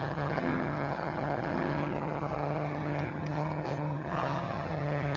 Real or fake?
fake